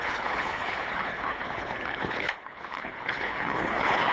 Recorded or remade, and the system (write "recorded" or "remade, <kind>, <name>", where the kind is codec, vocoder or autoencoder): remade, codec, HILCodec